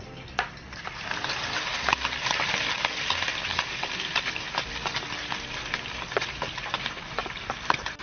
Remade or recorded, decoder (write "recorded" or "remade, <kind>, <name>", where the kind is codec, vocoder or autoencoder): recorded